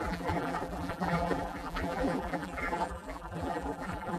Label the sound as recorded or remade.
remade